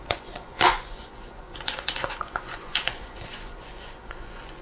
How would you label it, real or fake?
fake